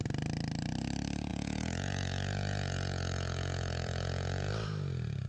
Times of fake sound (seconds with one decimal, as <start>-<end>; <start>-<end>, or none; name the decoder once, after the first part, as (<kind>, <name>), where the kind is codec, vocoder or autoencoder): 1.3-4.5 (vocoder, Vocos)